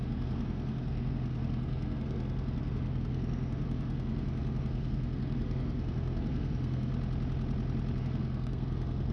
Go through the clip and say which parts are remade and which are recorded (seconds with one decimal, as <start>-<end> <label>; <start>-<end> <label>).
0.0-6.9 remade; 6.9-8.0 recorded; 8.0-9.1 remade